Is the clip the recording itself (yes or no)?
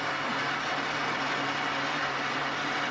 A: yes